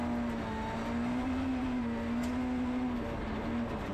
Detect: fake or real real